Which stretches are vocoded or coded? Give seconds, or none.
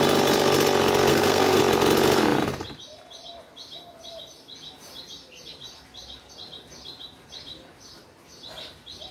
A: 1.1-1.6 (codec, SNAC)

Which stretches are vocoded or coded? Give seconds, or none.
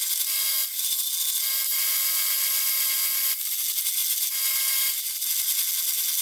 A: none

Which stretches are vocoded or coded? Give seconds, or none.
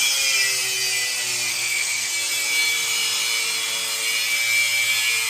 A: 1.5-2.1 (codec, SNAC)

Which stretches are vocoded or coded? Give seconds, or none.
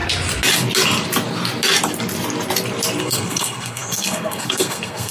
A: 3.0-5.1 (codec, SNAC)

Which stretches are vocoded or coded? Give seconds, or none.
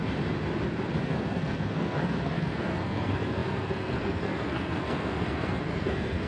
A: 1.0-6.3 (codec, SNAC)